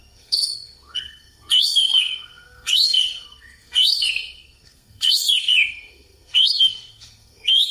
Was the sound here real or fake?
fake